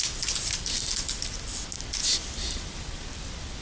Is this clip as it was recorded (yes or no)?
yes